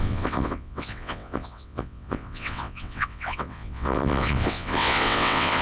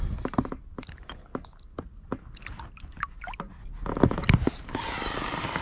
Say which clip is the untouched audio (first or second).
second